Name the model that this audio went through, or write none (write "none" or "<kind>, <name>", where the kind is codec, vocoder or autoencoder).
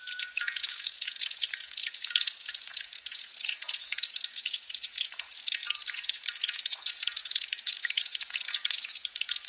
vocoder, Vocos